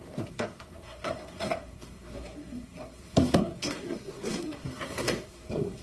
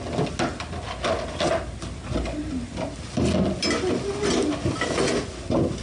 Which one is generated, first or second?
first